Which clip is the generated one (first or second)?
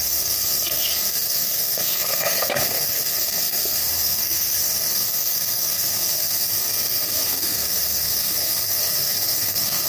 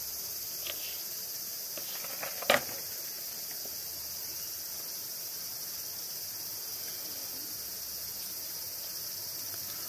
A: first